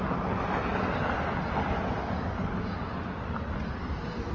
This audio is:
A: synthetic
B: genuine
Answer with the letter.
B